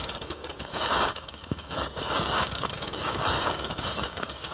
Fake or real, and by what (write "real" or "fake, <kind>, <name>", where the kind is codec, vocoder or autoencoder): fake, codec, DAC